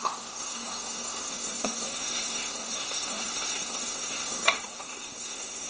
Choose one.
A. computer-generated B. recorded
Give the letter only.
A